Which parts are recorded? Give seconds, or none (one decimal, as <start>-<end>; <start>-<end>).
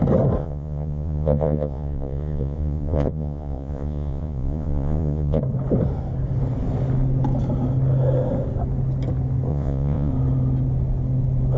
0.0-0.4; 5.4-9.5; 10.1-11.6